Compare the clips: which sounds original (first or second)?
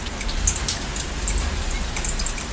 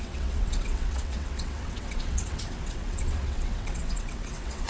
first